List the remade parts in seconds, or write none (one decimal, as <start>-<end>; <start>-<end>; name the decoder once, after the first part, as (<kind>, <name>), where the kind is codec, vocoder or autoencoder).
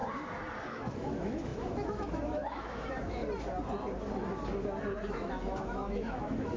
0.7-3.2 (autoencoder, DAC-VAE); 5.1-6.6